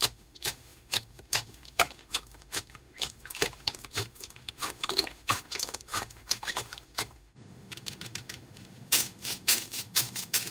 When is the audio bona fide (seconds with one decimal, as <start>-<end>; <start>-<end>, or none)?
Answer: none

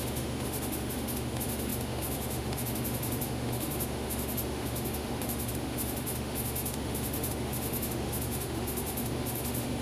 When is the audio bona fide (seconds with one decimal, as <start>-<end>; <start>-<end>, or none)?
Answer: none